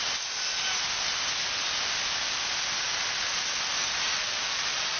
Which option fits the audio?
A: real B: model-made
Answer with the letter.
A